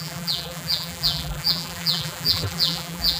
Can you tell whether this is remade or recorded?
remade